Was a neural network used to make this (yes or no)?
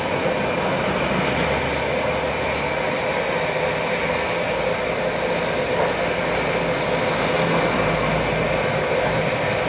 no